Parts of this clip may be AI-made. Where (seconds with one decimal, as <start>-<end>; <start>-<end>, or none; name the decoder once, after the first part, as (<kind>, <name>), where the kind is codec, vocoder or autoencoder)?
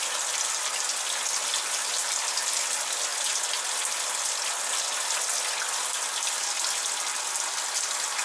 none